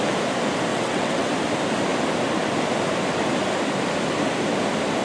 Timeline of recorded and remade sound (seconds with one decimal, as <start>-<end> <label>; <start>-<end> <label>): 0.0-0.7 recorded; 0.7-1.3 remade; 1.3-5.0 recorded